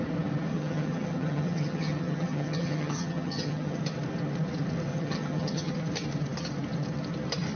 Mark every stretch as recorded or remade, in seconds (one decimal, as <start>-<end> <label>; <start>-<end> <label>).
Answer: 0.0-0.5 recorded; 0.5-3.8 remade; 3.8-4.9 recorded; 4.9-5.8 remade; 5.8-7.6 recorded